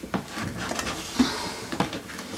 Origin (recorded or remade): recorded